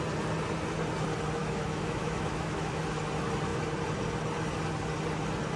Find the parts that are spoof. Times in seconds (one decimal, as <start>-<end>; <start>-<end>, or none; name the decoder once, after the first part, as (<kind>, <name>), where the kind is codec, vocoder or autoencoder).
1.4-2.8 (autoencoder, DAC-VAE)